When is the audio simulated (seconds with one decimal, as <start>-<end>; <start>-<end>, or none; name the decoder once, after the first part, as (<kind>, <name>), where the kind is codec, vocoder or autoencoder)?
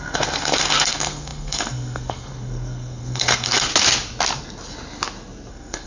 0.0-3.7 (codec, SNAC); 5.5-5.9